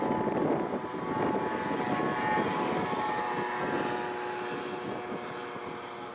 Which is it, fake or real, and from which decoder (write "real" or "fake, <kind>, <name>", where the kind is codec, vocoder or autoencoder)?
real